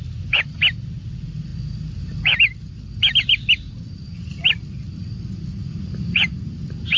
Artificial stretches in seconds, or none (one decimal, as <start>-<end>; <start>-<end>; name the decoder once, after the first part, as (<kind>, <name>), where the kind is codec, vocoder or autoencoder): none